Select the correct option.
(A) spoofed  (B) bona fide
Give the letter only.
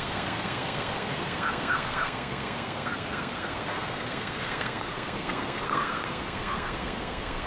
A